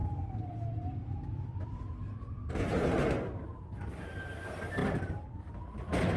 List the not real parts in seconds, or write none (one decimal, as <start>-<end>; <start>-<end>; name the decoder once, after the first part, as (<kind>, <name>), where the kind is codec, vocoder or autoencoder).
none